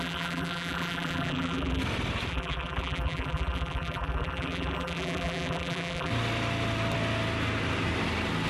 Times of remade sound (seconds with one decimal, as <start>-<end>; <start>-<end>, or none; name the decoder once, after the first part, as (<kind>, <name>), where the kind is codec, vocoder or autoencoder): 0.0-1.8 (vocoder, BigVGAN v2); 2.3-6.1